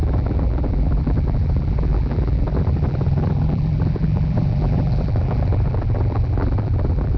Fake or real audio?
fake